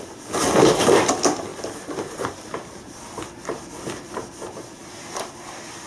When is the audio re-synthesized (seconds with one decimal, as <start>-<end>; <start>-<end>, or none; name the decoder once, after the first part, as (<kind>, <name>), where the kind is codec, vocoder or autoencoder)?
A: 1.5-5.0 (vocoder, BigVGAN v2)